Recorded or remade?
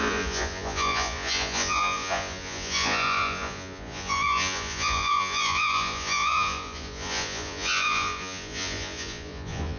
remade